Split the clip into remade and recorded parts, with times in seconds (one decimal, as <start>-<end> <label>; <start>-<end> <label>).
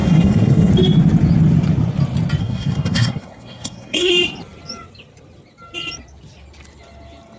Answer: 0.0-0.7 remade; 0.7-2.4 recorded; 2.4-4.1 remade; 4.1-7.4 recorded